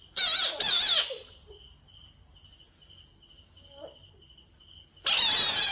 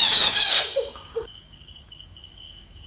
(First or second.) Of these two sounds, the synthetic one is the second